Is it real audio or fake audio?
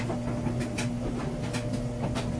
real